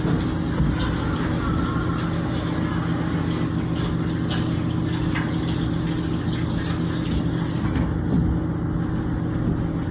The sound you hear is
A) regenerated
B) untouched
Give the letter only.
B